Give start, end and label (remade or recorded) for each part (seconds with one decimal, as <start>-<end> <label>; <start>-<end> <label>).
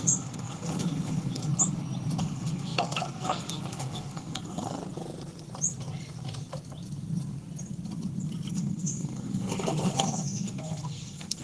0.0-1.5 remade; 1.5-2.2 recorded; 2.2-4.8 remade; 4.8-8.5 recorded; 8.5-11.4 remade